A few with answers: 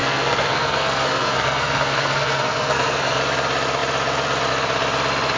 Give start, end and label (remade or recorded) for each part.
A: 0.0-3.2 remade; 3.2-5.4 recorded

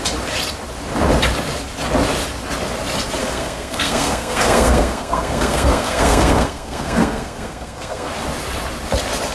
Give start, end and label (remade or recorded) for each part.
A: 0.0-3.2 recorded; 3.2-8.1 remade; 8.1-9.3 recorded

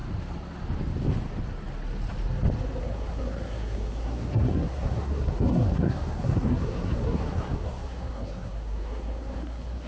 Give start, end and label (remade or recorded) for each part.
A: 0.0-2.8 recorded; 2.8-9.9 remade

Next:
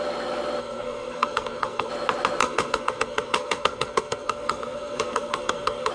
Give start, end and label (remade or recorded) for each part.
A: 0.0-0.6 recorded; 0.6-1.9 remade; 1.9-2.4 recorded; 2.4-5.9 remade